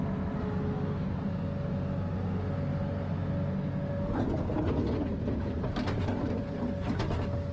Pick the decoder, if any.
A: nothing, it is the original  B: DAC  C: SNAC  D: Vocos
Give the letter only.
A